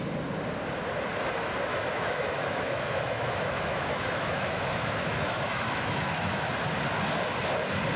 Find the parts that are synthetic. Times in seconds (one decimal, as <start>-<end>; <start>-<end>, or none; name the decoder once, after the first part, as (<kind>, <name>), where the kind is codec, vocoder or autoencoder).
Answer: 1.7-6.4 (autoencoder, DAC-VAE)